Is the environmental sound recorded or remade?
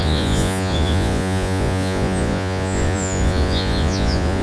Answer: remade